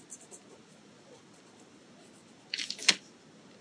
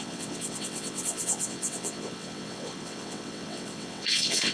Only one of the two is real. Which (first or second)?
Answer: first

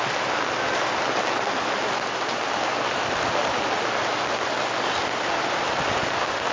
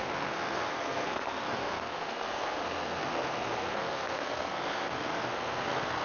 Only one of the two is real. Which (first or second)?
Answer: first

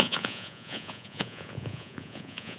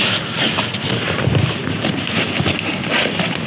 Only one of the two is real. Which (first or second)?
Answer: second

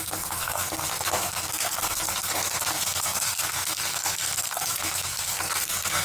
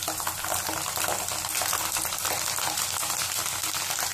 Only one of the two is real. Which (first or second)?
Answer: second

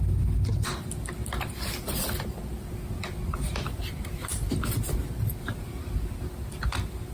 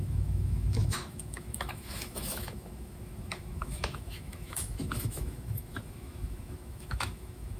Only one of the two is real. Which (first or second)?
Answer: first